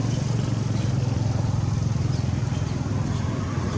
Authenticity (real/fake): real